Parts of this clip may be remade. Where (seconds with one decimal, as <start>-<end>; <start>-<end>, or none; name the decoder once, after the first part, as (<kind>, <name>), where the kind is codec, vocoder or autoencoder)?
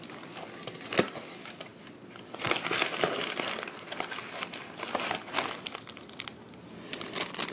none